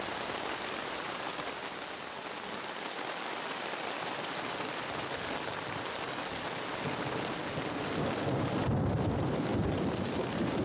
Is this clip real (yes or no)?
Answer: yes